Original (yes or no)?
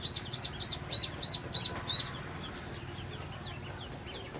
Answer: yes